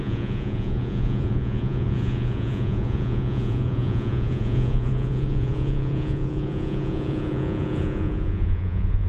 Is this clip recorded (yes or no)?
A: no